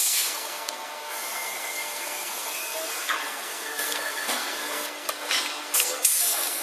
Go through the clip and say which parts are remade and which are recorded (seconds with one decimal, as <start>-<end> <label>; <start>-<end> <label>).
0.0-6.6 remade